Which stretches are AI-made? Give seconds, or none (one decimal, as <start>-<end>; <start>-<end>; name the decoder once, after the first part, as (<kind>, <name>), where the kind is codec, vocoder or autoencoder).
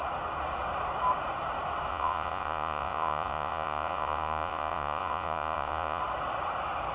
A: 1.9-6.0 (vocoder, Vocos)